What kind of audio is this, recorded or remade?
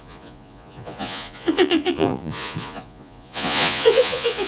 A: remade